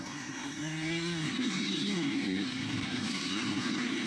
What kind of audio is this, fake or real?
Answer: fake